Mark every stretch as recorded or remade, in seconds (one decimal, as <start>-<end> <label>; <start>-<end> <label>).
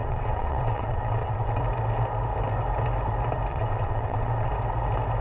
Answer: 0.0-1.6 remade; 1.6-3.5 recorded; 3.5-4.5 remade; 4.5-5.2 recorded